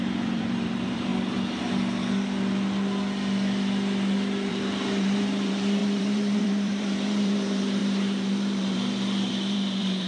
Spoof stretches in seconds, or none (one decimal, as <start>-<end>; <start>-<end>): 0.0-1.1; 4.5-10.1